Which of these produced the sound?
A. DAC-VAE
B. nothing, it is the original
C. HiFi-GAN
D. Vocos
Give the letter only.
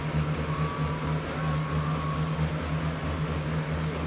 B